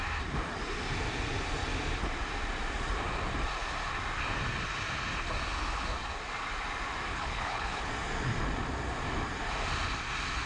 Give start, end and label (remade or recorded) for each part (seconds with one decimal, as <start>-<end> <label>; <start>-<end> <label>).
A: 0.0-7.1 recorded; 7.1-7.9 remade; 7.9-10.5 recorded